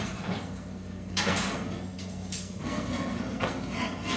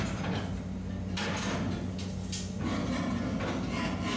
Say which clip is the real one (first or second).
second